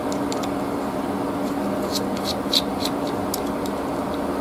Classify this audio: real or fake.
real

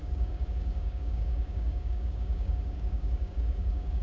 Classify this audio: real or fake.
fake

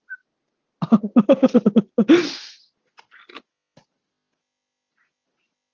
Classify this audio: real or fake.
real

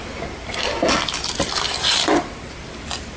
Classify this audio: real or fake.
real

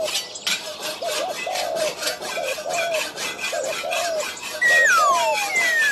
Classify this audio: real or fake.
real